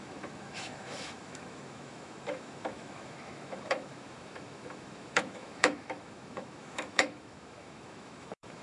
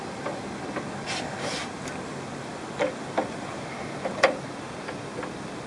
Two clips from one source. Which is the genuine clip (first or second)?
second